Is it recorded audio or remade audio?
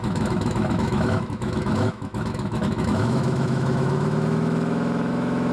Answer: remade